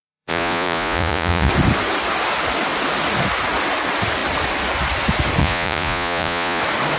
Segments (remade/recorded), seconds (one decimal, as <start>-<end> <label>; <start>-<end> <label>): 0.0-1.5 remade; 1.5-5.4 recorded; 5.4-6.6 remade; 6.6-7.0 recorded